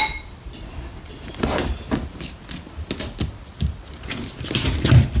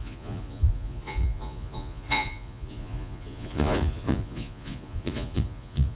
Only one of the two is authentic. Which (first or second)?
first